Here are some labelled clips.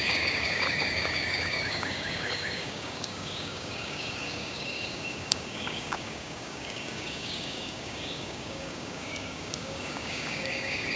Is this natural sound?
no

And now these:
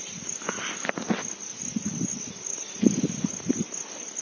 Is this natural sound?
yes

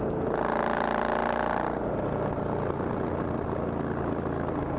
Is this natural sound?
yes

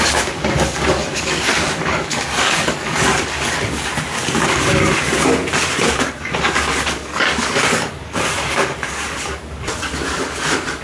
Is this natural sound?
no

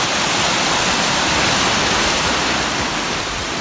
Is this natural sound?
yes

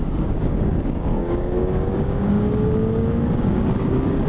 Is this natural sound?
no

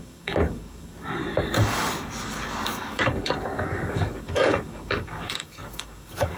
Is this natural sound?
no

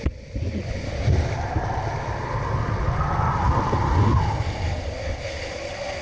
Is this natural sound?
yes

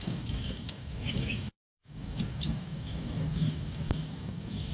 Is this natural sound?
no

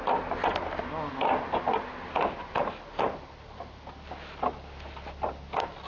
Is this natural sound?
yes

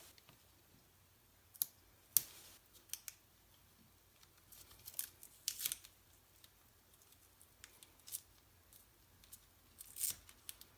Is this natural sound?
yes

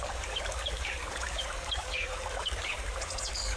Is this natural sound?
no